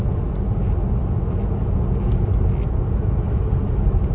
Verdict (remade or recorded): recorded